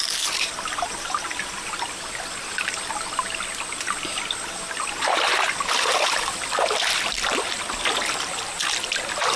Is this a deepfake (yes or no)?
no